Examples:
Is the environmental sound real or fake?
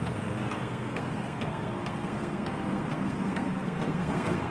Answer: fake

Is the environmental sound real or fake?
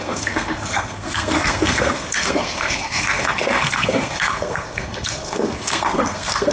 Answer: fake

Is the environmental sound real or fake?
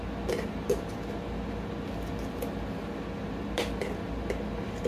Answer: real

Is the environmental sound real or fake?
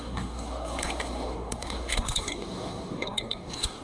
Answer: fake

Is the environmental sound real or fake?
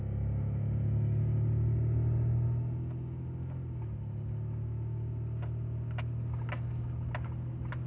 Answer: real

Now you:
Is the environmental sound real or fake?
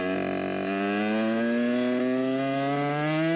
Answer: real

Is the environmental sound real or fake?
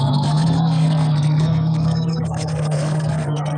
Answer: fake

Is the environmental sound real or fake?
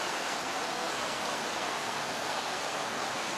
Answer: fake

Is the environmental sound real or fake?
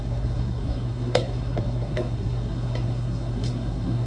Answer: fake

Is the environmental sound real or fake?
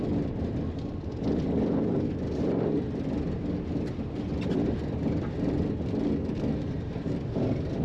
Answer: real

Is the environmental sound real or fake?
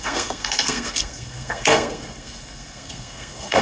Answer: fake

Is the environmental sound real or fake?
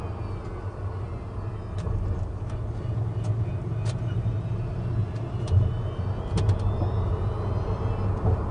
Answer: real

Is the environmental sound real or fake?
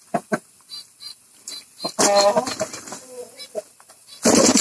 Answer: real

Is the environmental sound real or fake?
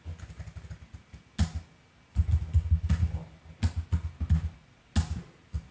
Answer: real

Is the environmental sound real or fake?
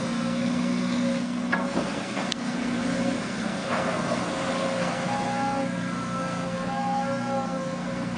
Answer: fake